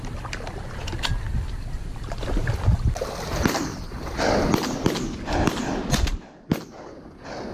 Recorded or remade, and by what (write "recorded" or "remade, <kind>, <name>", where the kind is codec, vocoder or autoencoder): recorded